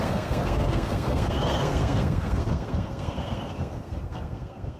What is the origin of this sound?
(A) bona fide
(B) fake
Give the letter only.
B